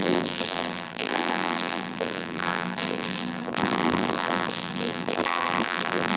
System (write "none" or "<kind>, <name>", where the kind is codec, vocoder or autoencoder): vocoder, BigVGAN v2